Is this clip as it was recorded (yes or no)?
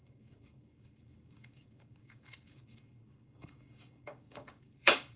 no